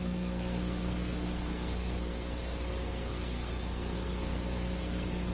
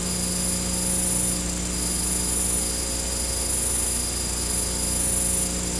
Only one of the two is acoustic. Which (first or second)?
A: second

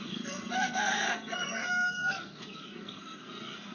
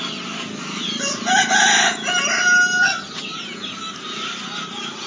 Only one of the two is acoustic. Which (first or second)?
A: second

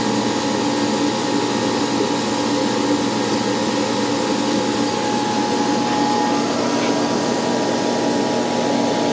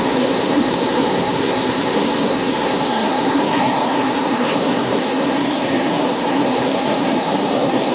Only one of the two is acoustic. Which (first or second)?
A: first